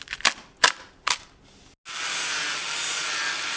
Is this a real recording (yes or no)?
yes